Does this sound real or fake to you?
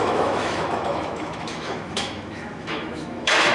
fake